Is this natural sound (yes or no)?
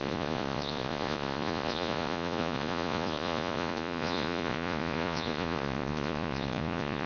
no